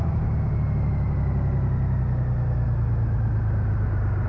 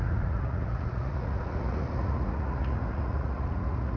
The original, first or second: first